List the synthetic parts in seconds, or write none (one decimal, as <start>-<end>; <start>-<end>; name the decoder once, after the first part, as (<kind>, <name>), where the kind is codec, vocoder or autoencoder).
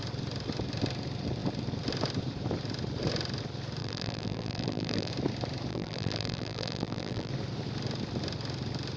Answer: 3.8-5.1 (vocoder, BigVGAN v2); 5.7-7.3